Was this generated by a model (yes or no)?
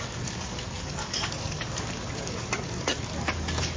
yes